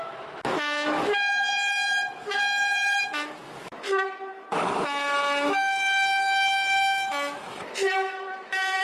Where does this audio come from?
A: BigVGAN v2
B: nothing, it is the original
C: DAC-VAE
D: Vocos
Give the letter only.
C